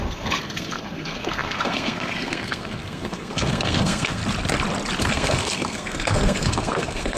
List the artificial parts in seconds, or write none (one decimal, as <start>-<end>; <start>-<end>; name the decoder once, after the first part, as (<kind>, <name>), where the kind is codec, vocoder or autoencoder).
0.0-4.2 (codec, SNAC); 5.0-7.2

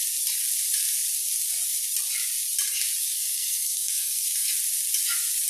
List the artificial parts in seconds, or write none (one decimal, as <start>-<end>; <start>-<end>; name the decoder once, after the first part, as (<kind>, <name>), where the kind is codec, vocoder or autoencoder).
3.0-4.5 (codec, SNAC)

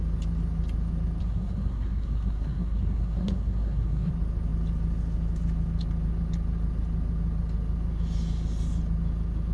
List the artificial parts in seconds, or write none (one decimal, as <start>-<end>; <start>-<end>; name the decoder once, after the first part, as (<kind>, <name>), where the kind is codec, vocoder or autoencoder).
1.2-4.1 (codec, SNAC)

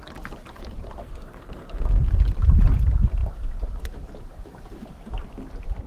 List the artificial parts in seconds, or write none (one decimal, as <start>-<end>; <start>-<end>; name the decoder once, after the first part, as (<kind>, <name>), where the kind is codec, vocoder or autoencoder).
1.0-2.1 (codec, SNAC)

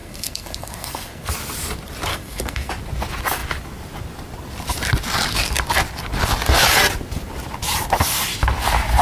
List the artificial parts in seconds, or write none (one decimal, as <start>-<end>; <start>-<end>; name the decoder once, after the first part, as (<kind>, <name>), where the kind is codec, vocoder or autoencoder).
0.0-1.3 (codec, SNAC); 2.1-2.7

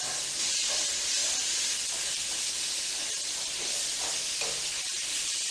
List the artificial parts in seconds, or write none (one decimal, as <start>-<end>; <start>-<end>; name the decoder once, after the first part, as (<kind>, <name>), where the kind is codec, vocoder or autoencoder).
none

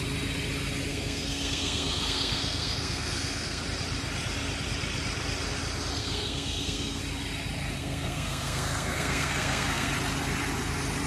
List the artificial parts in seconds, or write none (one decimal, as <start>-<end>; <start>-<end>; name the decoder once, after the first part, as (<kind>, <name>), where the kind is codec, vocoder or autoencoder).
0.9-3.6 (codec, SNAC); 6.0-7.0; 7.8-9.9

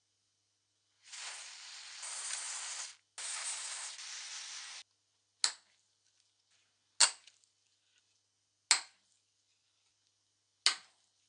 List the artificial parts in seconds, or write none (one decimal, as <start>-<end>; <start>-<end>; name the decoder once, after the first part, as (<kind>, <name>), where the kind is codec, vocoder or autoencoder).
none